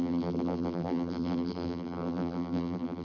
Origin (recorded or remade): remade